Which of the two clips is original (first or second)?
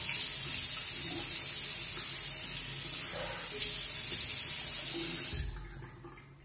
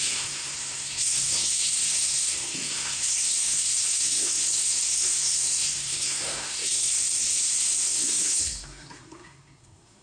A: first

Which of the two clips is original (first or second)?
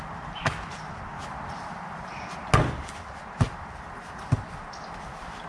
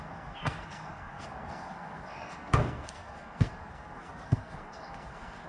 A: first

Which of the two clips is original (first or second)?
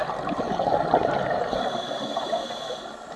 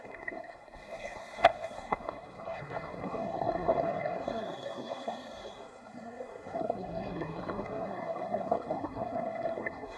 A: first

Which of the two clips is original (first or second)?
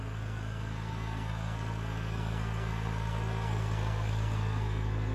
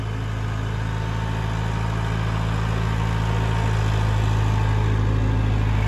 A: second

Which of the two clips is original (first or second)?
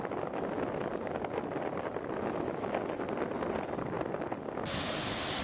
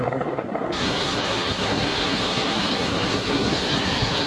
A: first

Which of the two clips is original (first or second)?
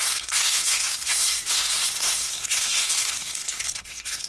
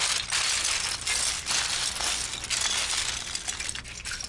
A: second